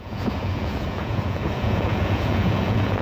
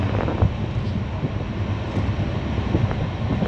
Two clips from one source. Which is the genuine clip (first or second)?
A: second